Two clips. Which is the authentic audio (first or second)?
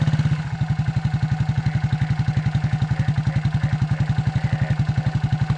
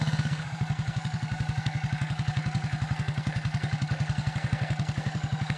first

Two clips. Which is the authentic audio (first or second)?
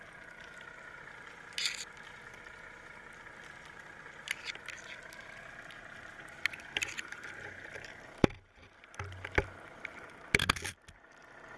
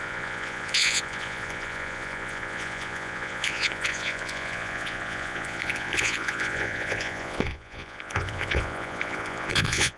first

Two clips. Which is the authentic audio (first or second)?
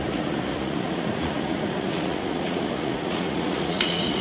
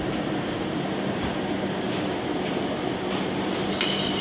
second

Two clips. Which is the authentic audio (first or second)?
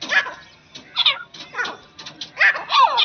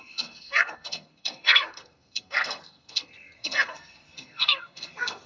first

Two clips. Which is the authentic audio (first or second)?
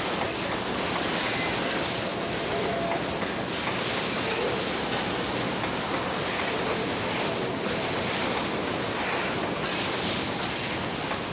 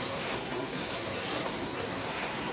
first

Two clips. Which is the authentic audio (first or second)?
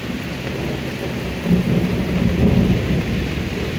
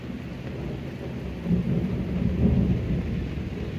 second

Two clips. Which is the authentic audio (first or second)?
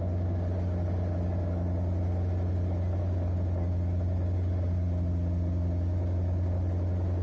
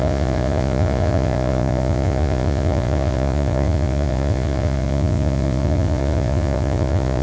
first